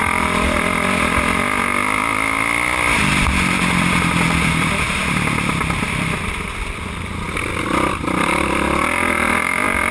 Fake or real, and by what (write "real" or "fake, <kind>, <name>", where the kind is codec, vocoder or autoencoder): real